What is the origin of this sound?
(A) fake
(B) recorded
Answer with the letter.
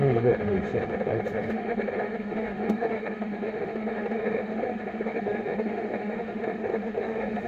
A